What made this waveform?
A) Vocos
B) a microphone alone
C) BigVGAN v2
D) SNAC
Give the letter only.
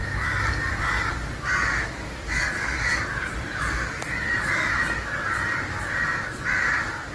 B